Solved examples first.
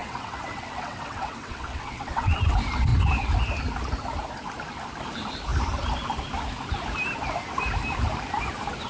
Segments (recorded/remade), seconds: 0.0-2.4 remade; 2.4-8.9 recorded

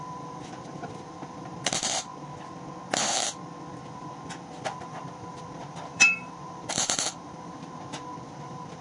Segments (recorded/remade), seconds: 0.0-2.1 remade; 2.1-4.7 recorded; 4.7-8.8 remade

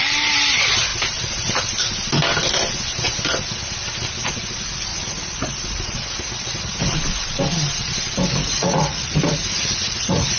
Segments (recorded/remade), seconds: 0.0-4.9 recorded; 4.9-7.4 remade; 7.4-8.4 recorded; 8.4-10.4 remade

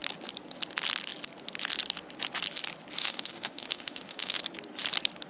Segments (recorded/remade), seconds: 0.0-3.0 recorded; 3.0-4.4 remade; 4.4-5.3 recorded